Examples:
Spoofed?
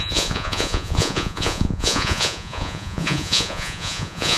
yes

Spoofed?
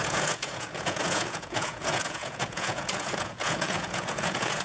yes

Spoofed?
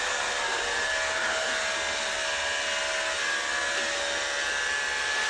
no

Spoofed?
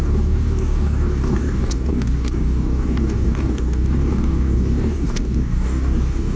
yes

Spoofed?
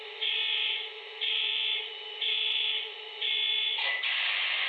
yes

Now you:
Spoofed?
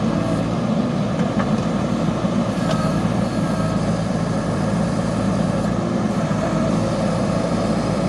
yes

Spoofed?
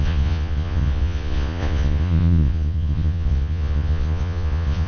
yes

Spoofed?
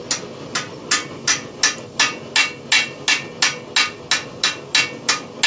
no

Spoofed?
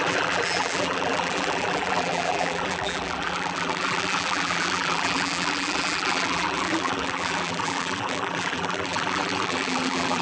yes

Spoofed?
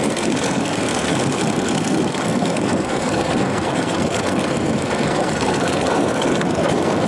yes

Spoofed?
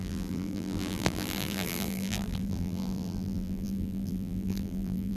yes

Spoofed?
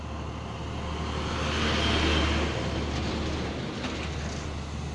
no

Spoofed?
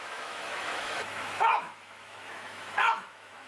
yes